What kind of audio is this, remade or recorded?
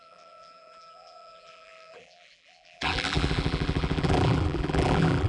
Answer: remade